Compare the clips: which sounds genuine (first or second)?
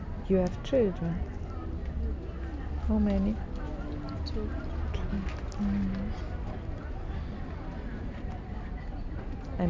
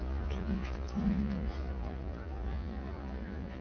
first